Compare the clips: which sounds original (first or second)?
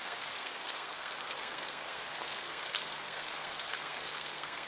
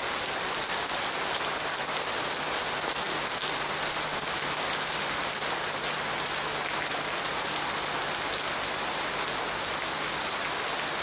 second